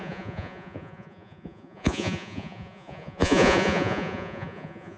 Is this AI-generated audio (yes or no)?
yes